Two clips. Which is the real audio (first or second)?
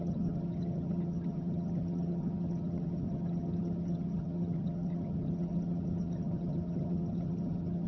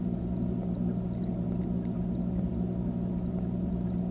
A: second